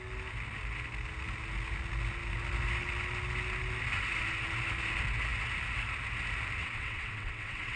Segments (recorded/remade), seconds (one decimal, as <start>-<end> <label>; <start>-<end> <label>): 0.0-6.6 recorded; 6.6-7.8 remade